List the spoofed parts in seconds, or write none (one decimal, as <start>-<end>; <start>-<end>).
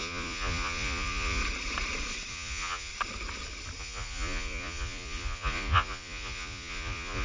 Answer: 0.0-1.4; 2.3-2.9; 3.8-7.2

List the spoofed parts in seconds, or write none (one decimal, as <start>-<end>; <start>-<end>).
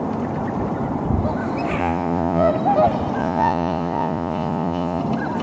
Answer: 1.8-2.5; 3.2-5.0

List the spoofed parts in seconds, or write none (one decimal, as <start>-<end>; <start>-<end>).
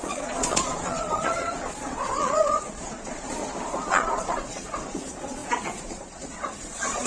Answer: 0.0-3.4; 3.9-7.1